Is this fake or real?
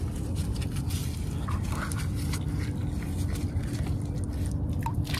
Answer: real